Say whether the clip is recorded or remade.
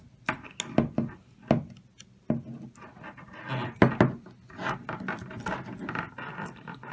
recorded